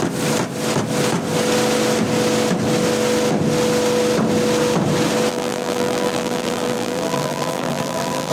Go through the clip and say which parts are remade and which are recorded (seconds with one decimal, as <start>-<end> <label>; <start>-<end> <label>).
0.0-5.3 recorded; 5.3-8.3 remade